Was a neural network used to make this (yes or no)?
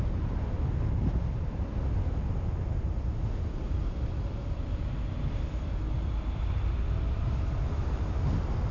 no